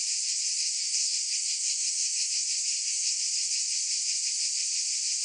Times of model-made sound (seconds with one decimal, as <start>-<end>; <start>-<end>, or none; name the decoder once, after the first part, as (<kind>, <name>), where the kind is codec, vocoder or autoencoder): 0.5-2.3 (codec, SNAC); 2.7-3.2